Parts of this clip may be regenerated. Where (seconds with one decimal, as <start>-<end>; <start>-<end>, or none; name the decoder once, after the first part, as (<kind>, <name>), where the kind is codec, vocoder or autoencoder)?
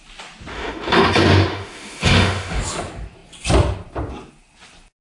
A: 0.5-1.1 (autoencoder, DAC-VAE); 1.5-2.6